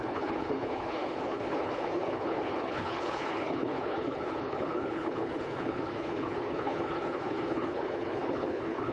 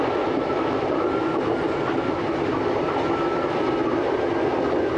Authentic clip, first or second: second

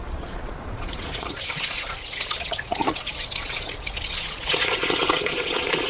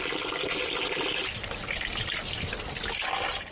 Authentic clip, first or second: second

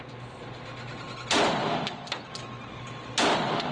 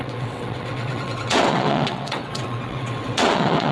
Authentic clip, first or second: first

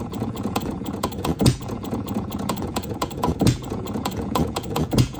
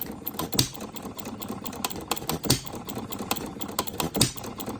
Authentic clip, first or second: second